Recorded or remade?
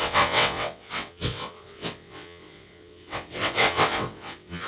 remade